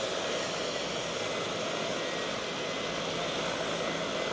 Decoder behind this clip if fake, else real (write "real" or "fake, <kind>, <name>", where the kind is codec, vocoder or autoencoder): real